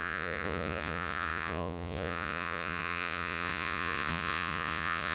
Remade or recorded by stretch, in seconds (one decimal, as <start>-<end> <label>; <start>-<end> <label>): 0.0-5.1 remade